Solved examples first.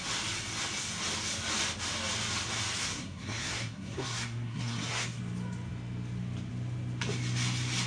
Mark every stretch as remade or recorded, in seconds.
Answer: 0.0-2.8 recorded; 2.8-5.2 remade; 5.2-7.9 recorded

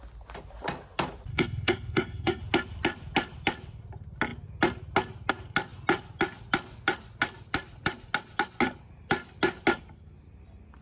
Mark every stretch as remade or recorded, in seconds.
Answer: 0.0-1.3 recorded; 1.3-2.4 remade; 2.4-10.8 recorded